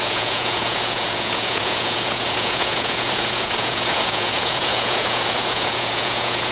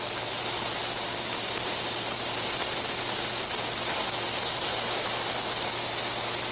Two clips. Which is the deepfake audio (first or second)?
first